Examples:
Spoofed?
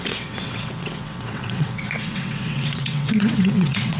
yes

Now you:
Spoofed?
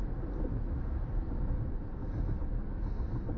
no